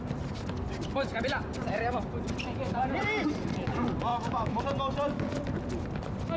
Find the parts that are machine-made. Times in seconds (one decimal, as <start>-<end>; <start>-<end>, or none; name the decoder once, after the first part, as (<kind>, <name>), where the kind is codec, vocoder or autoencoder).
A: 4.1-4.6 (autoencoder, DAC-VAE)